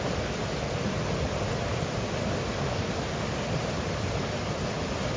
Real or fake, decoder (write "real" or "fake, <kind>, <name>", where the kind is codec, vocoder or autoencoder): real